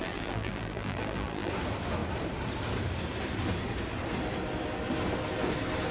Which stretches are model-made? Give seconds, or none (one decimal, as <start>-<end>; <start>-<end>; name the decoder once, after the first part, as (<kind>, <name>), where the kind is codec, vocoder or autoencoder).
0.0-1.5 (vocoder, BigVGAN v2)